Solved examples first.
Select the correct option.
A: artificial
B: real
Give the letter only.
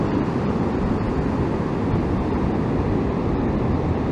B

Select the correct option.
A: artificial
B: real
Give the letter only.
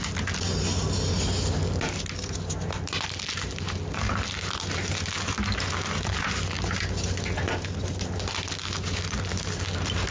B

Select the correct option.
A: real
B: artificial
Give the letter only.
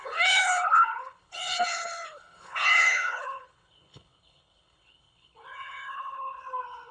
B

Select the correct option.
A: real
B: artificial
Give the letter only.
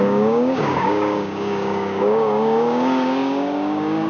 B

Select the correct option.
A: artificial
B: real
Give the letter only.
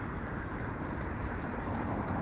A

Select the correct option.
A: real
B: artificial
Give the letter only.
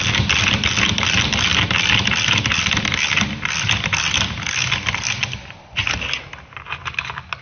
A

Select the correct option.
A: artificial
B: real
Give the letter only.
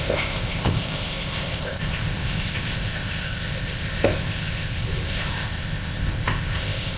A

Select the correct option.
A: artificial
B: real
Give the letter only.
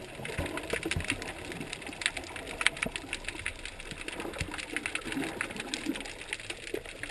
B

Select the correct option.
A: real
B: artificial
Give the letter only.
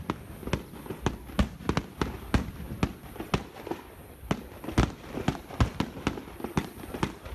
A